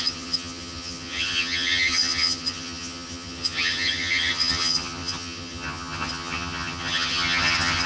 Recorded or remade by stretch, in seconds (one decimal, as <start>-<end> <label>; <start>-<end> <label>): 0.0-7.9 remade